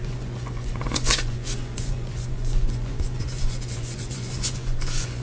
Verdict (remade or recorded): remade